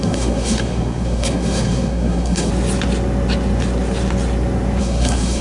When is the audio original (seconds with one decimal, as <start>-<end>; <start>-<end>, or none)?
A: 2.5-4.8